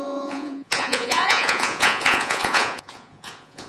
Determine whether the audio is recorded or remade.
remade